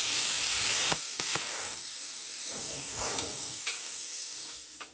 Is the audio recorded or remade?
remade